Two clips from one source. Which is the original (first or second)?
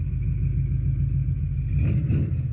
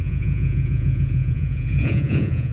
first